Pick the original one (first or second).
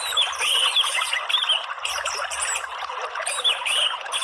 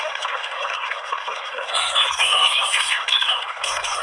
first